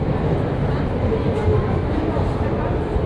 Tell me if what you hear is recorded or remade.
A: recorded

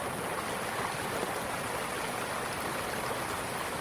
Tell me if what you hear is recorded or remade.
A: recorded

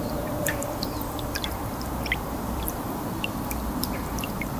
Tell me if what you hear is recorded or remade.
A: remade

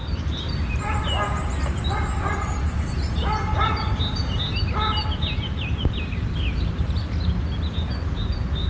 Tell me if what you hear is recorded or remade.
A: recorded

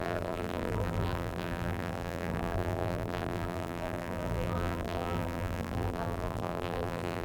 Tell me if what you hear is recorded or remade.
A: remade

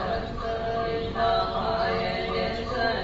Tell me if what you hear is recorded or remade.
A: recorded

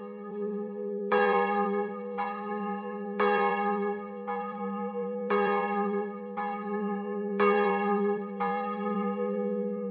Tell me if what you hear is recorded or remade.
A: remade